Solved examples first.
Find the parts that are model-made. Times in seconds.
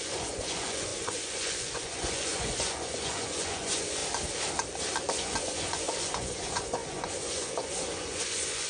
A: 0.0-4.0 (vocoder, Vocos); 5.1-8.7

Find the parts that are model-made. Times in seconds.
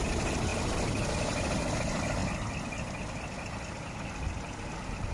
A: none